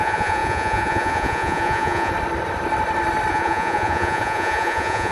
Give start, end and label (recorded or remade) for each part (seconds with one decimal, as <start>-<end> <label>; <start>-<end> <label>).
0.0-2.1 remade; 2.1-3.3 recorded; 3.3-5.1 remade